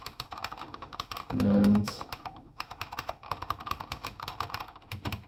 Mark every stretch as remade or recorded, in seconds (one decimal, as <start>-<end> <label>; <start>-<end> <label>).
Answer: 0.0-5.3 remade